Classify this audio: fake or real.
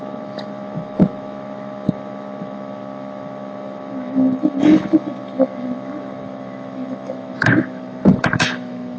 fake